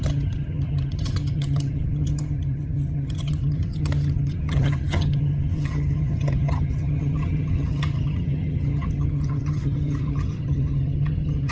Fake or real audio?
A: fake